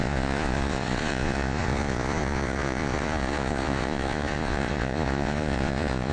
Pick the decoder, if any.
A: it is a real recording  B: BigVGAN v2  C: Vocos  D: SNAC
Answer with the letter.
C